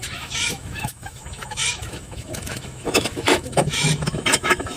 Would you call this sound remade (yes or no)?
yes